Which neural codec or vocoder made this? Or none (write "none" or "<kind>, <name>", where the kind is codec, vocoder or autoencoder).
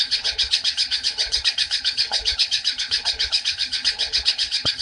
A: codec, HILCodec